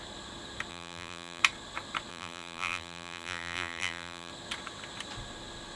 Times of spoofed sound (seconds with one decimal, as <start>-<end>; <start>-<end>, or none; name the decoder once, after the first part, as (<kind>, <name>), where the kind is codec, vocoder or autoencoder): 0.7-1.4 (vocoder, BigVGAN v2); 2.1-4.3